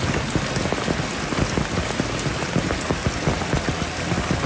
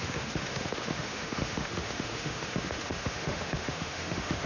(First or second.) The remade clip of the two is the second